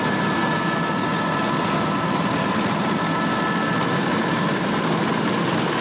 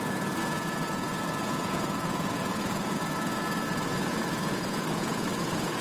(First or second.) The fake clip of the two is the second